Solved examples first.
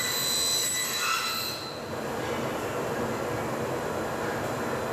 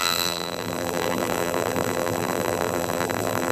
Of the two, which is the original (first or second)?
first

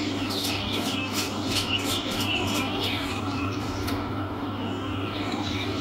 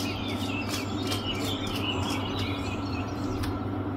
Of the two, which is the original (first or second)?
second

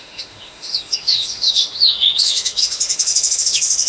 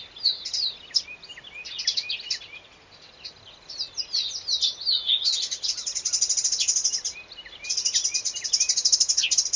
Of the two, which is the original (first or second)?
second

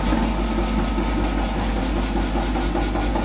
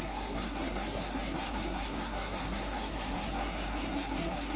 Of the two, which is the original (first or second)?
first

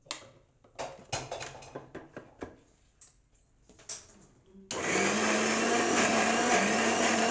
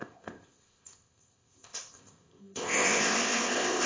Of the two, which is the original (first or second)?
first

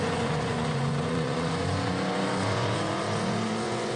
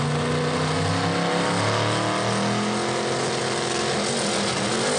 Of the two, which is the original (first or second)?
second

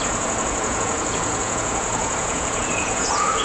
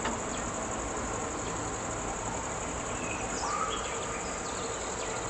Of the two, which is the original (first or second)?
second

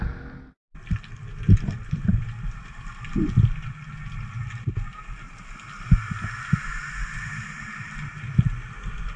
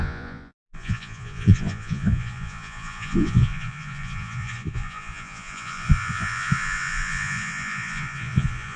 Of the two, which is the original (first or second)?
first